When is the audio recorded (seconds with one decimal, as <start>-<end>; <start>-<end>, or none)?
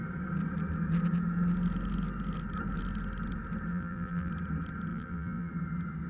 0.0-3.7; 4.3-4.9; 5.5-6.1